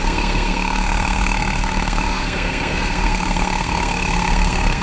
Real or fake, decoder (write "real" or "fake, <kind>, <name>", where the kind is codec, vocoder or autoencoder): fake, codec, SNAC